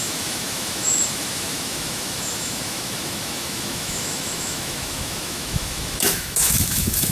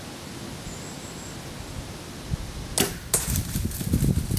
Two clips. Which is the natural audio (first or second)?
second